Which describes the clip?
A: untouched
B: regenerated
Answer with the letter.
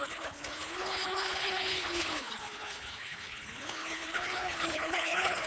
B